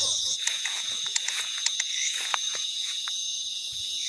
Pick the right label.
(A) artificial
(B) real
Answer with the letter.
A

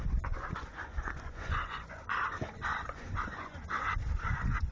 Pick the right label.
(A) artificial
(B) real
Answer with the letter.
A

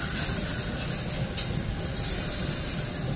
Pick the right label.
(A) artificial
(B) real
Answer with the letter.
B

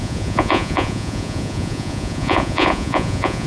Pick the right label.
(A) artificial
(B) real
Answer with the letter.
A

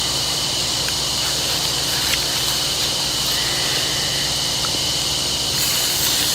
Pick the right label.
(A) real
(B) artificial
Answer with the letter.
A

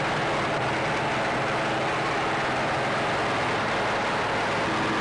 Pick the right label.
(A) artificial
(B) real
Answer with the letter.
B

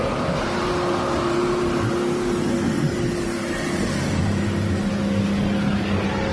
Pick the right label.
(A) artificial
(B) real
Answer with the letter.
B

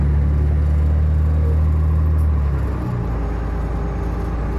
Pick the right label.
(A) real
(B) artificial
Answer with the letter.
A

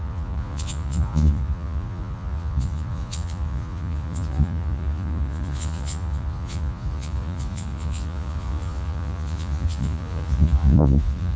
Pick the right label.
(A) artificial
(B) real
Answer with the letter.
A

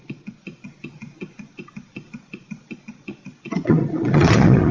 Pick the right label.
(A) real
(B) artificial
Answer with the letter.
B